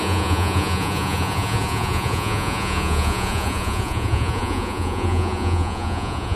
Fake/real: fake